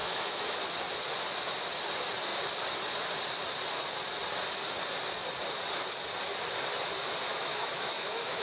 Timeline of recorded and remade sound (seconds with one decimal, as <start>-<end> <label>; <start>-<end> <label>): 0.0-0.6 remade; 0.6-7.3 recorded; 7.3-8.4 remade